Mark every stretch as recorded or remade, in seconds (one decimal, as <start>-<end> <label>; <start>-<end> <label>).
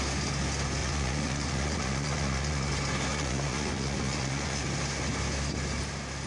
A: 0.0-0.8 recorded; 0.8-2.7 remade; 2.7-3.1 recorded; 3.1-4.6 remade; 4.6-6.3 recorded